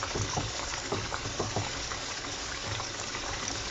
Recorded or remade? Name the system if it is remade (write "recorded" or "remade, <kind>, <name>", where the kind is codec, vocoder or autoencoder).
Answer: remade, codec, DAC